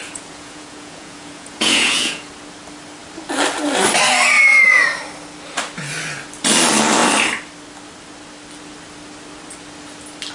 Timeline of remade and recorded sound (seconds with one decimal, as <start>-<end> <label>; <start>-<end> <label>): 0.0-2.3 remade; 2.3-10.3 recorded